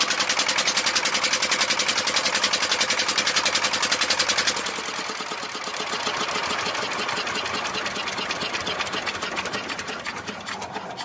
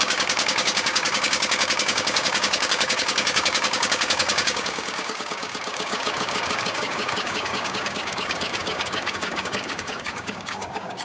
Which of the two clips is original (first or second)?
first